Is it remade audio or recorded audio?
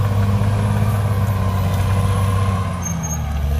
recorded